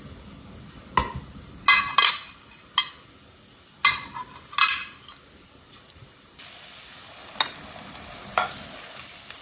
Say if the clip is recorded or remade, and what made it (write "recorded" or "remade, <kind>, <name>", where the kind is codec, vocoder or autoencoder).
recorded